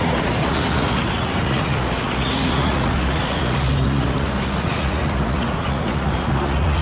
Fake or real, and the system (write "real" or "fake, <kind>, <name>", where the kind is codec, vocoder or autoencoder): fake, vocoder, Vocos